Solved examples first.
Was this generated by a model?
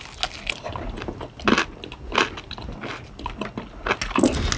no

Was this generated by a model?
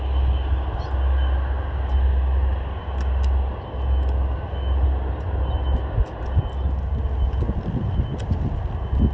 no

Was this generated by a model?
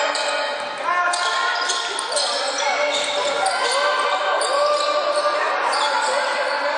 no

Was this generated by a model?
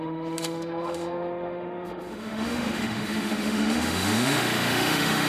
yes